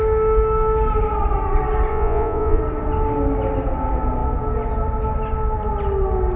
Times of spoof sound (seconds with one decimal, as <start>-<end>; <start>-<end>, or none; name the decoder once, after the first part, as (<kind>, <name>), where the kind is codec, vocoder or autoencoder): 1.9-2.6 (vocoder, Vocos)